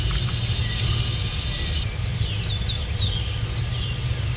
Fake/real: real